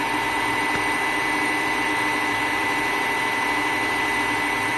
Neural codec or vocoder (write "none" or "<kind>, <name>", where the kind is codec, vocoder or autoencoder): none